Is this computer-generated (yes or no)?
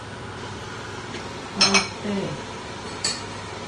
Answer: no